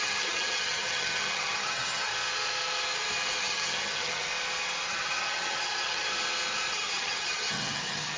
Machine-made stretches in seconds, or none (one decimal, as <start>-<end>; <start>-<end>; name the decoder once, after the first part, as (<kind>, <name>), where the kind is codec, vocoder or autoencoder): 0.0-2.1 (vocoder, HiFi-GAN); 3.4-4.3; 4.9-6.1; 6.7-8.2